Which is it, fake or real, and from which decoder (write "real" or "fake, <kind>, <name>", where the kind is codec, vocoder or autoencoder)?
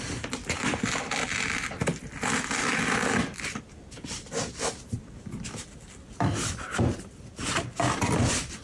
real